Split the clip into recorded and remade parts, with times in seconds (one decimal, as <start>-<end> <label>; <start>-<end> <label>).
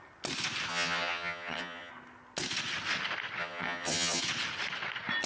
0.0-0.7 recorded; 0.7-1.9 remade; 1.9-3.4 recorded; 3.4-4.2 remade; 4.2-5.3 recorded